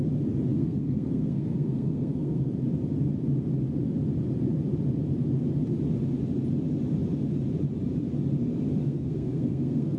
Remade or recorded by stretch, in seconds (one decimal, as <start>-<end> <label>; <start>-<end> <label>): 0.0-0.5 recorded; 0.5-2.5 remade; 2.5-8.8 recorded; 8.8-10.0 remade